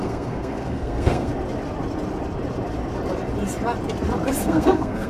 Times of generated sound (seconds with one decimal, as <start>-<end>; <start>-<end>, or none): 0.0-1.3; 4.4-5.1